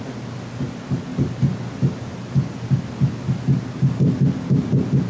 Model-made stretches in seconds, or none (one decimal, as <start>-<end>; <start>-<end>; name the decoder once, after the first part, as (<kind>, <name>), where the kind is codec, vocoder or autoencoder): none